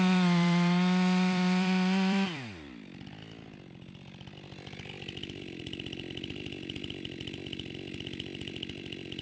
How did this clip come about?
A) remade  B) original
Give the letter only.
A